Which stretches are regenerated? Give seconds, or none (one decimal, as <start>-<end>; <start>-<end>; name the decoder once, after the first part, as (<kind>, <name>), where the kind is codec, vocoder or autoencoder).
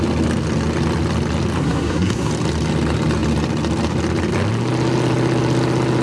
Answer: 1.6-2.3 (codec, SNAC)